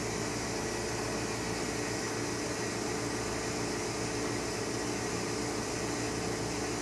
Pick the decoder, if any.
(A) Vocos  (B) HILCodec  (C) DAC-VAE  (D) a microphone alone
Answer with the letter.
D